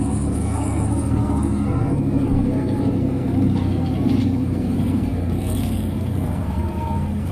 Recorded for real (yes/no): no